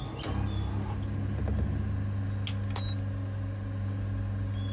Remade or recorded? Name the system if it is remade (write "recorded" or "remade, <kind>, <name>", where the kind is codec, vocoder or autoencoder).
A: recorded